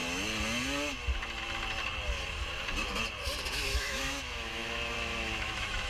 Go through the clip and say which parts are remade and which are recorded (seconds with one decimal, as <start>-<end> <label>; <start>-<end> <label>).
0.0-3.5 recorded; 3.5-5.9 remade